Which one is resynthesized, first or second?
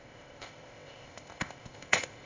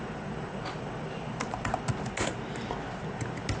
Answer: first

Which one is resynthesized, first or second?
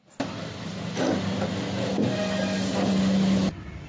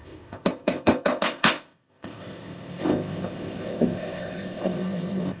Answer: second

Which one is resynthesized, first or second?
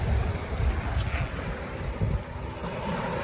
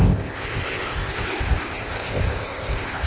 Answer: second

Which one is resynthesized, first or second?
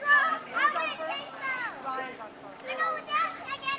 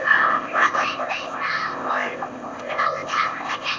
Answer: second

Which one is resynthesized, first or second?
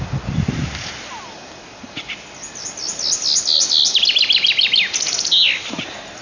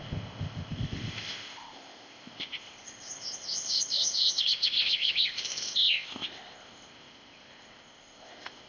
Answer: second